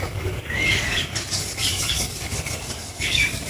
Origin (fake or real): fake